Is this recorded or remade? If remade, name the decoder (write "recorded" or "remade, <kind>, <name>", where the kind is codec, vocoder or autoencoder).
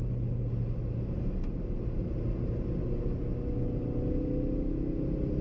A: recorded